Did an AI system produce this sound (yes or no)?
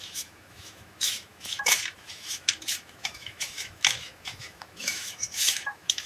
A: yes